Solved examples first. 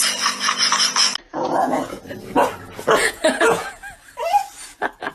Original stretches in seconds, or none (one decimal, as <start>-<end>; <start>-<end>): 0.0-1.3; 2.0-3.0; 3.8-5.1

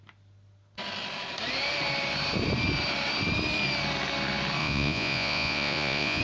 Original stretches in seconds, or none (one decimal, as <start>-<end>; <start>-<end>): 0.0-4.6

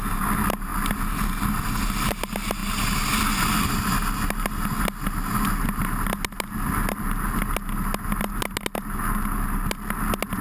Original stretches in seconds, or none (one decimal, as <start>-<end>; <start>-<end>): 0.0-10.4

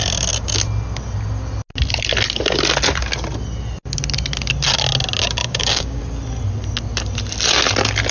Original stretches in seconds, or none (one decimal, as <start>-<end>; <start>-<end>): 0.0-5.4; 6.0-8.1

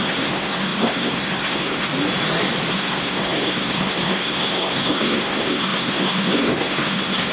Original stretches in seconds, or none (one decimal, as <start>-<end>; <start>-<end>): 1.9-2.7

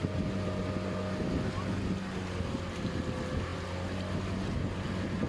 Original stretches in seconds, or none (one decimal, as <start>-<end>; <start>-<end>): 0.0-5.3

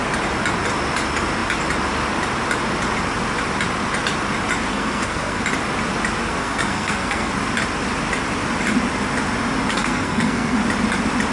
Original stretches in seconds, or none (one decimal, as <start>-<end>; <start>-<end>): 0.0-4.7; 5.4-6.2; 7.3-9.7; 10.6-11.3